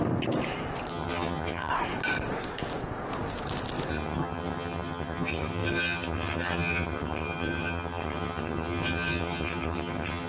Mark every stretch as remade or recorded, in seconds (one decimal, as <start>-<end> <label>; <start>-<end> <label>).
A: 0.0-0.9 recorded; 0.9-1.7 remade; 1.7-3.9 recorded; 3.9-10.3 remade